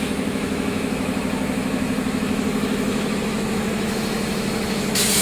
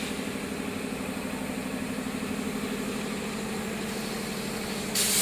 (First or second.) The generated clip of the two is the first